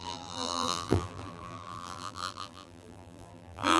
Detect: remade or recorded remade